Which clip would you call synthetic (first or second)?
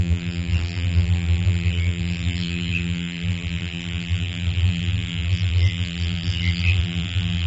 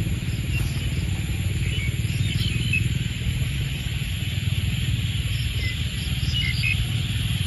first